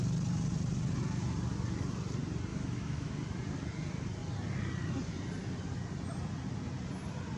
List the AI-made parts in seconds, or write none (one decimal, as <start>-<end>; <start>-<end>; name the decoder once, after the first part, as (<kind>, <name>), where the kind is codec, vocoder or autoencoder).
2.5-3.1 (autoencoder, DAC-VAE)